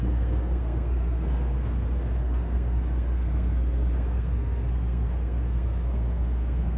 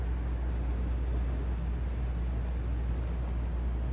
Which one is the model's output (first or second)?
first